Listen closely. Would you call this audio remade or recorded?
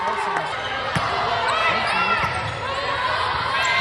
recorded